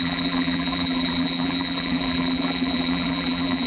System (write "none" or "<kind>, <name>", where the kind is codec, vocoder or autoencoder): vocoder, BigVGAN v2